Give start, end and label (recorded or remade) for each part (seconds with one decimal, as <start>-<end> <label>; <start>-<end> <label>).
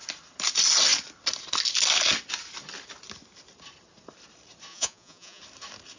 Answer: 0.0-4.7 recorded; 4.7-5.4 remade; 5.4-6.0 recorded